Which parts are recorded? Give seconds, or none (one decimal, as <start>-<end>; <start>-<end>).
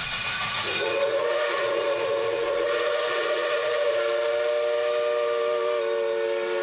4.0-6.6